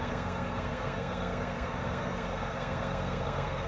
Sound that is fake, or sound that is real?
fake